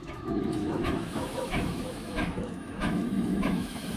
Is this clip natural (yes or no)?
no